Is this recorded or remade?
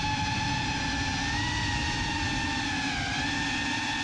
recorded